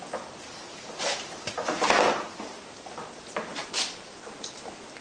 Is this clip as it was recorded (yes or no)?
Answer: yes